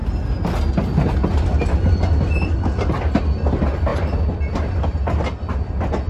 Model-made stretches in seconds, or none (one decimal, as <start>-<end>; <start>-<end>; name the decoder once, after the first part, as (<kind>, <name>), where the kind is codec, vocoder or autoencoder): none